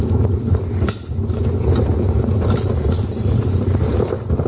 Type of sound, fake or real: real